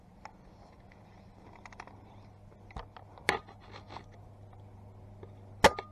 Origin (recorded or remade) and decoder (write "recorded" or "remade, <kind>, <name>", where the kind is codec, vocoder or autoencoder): recorded